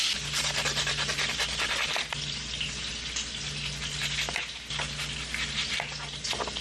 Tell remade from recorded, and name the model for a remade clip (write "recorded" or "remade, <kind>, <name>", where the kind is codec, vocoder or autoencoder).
recorded